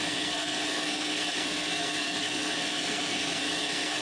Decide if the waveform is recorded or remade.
remade